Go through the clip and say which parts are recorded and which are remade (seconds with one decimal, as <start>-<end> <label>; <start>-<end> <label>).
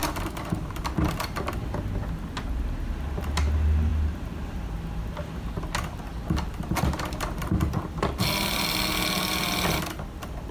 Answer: 0.0-0.8 remade; 0.8-10.5 recorded